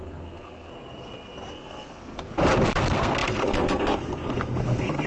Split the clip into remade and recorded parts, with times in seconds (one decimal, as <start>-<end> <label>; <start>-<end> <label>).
0.0-0.7 remade; 0.7-1.5 recorded; 1.5-2.3 remade; 2.3-2.8 recorded; 2.8-5.1 remade